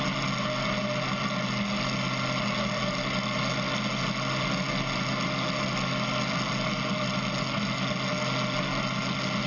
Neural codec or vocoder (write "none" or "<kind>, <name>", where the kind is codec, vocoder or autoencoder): none